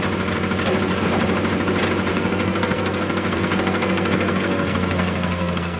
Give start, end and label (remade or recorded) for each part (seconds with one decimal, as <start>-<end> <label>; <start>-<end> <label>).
0.0-2.1 recorded; 2.1-5.8 remade